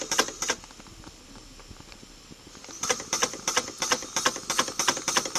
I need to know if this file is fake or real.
real